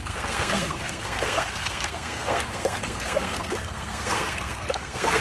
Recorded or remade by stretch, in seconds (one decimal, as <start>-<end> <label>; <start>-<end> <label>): 0.0-5.2 remade